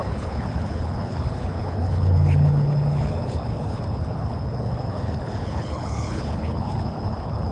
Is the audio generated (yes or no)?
yes